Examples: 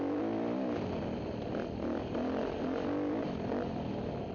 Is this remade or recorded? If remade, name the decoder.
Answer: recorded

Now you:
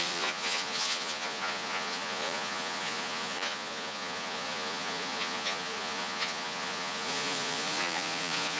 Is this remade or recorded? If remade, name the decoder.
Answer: remade, vocoder, Vocos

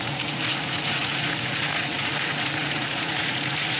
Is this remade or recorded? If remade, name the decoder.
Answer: remade, vocoder, Vocos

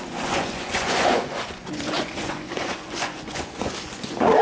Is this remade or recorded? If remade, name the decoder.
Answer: remade, vocoder, Vocos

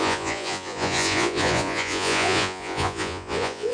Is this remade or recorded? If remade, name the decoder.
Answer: remade, vocoder, Vocos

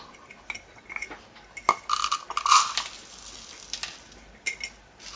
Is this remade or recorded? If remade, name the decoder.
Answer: recorded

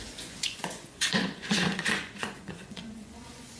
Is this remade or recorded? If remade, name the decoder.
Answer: remade, vocoder, Vocos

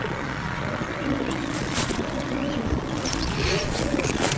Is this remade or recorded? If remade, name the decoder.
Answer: remade, vocoder, Vocos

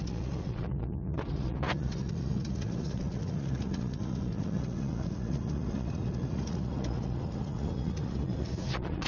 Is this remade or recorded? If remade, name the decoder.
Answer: remade, vocoder, Vocos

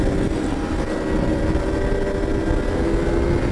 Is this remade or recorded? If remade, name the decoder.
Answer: recorded